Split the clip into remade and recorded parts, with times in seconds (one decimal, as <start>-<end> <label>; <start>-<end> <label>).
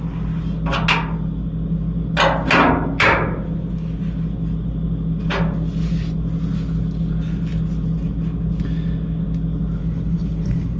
0.0-9.8 recorded; 9.8-10.8 remade